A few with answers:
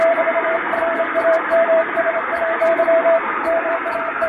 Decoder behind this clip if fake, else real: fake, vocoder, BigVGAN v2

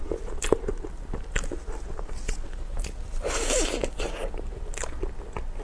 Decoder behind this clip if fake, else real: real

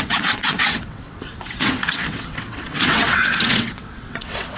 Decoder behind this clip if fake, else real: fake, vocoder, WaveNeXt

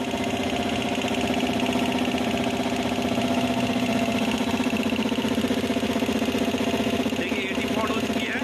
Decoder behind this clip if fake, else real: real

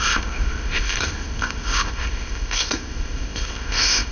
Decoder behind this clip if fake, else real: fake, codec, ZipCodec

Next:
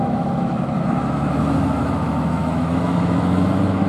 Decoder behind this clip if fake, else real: fake, autoencoder, DAC-VAE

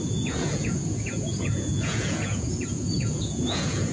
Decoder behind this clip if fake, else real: fake, vocoder, Vocos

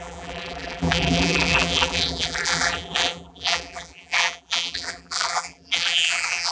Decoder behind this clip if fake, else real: fake, vocoder, BigVGAN v2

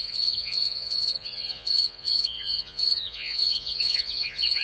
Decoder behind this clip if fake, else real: fake, vocoder, Vocos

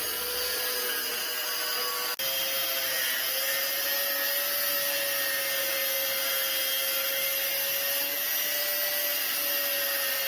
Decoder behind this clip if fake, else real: real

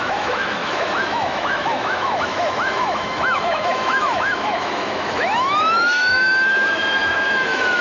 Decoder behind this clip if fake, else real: fake, autoencoder, DAC-VAE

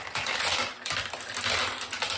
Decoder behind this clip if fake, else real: real